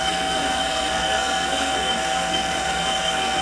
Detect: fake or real fake